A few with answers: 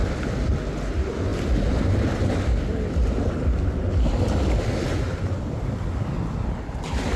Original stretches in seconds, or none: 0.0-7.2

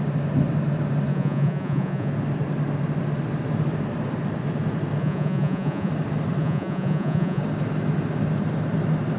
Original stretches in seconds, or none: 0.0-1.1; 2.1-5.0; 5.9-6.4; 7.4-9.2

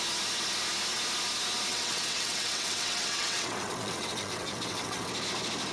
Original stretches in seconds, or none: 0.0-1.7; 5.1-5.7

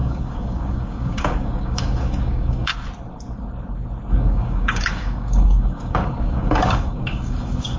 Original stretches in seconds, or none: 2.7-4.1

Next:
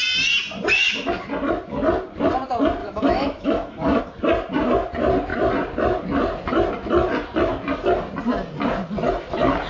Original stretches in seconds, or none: 0.0-2.8; 4.0-9.7